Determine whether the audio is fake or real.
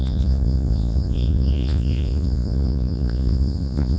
fake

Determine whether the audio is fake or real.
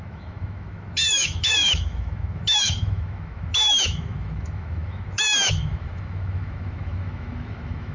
fake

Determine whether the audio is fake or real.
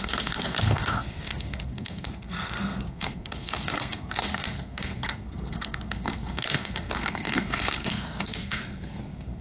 fake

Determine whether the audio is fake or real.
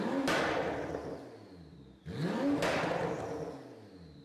real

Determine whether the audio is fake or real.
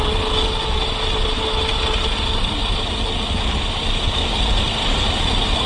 real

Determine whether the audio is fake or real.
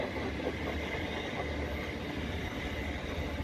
real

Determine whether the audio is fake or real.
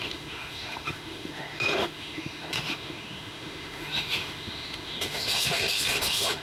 fake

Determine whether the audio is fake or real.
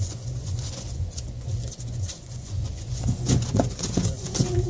fake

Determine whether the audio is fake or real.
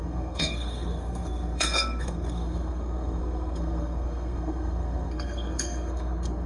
fake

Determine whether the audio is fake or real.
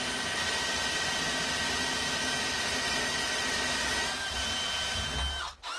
real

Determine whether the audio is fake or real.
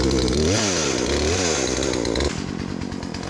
real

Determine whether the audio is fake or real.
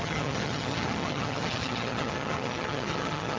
fake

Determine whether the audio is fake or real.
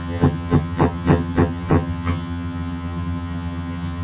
fake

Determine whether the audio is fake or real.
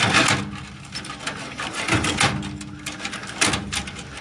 real